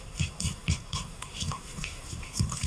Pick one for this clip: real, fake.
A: fake